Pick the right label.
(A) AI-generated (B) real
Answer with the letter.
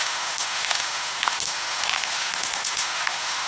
A